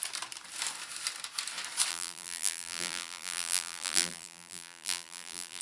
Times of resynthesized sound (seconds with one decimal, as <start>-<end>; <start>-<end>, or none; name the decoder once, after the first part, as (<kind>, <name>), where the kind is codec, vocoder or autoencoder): 1.9-5.6 (vocoder, BigVGAN v2)